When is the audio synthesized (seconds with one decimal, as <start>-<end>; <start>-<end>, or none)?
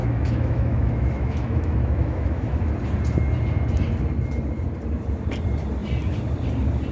0.0-2.7